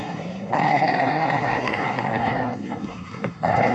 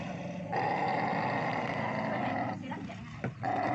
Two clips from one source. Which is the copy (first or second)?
first